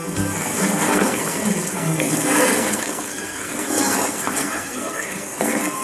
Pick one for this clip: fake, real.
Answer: fake